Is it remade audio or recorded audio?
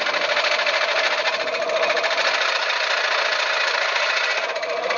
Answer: recorded